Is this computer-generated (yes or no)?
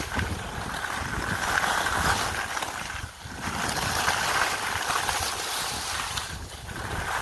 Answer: no